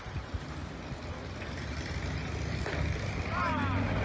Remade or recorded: recorded